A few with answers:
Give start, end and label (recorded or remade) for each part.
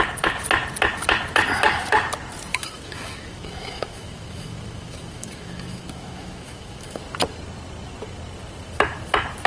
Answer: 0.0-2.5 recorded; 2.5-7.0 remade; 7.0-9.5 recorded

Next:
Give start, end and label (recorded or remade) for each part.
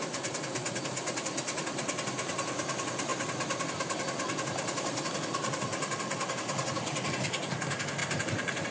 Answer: 0.0-8.0 recorded; 8.0-8.7 remade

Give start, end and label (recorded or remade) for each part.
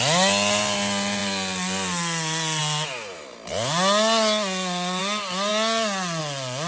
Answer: 0.0-6.7 recorded